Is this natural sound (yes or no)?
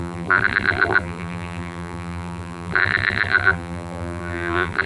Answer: no